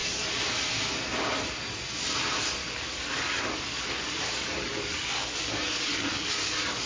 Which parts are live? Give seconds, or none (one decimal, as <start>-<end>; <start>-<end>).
0.0-2.6